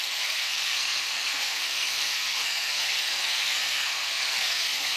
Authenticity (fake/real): fake